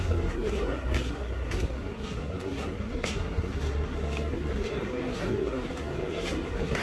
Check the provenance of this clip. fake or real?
fake